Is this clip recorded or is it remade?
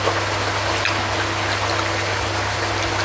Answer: recorded